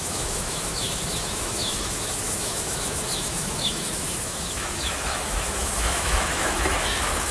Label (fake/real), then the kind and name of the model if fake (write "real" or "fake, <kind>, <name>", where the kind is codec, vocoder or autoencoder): fake, autoencoder, DAC-VAE